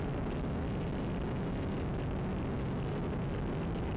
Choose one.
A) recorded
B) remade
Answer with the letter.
A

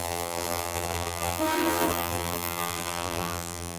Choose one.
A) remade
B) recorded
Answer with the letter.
A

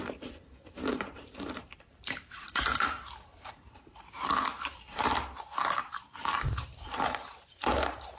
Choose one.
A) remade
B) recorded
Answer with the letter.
A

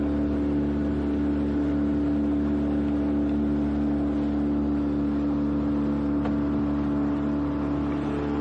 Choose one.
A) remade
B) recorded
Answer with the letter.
B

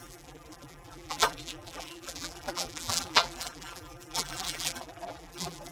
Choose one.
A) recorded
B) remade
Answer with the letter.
B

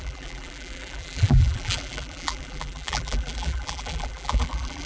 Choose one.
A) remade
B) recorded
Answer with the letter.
A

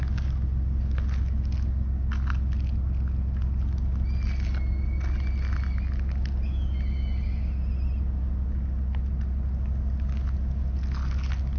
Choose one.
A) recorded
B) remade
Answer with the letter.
A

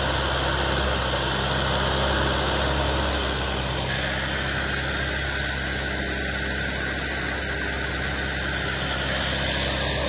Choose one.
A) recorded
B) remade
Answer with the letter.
A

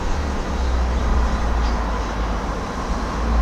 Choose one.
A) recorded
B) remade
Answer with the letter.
A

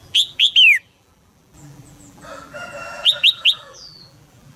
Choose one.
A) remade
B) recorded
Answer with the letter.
A